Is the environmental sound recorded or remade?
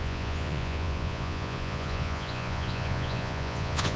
remade